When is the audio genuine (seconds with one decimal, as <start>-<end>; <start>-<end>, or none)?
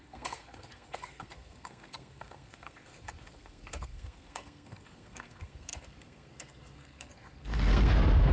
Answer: none